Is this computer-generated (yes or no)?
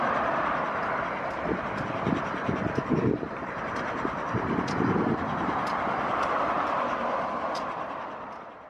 yes